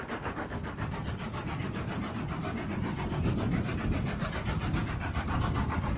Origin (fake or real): real